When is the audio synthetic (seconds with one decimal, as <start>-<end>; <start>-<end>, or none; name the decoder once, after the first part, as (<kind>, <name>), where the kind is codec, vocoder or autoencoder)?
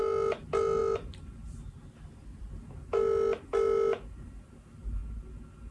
none